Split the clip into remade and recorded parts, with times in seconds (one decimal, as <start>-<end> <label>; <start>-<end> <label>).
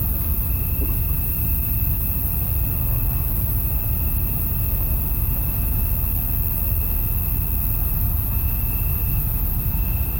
0.0-2.3 remade; 2.3-3.2 recorded; 3.2-5.8 remade; 5.8-7.8 recorded; 7.8-10.2 remade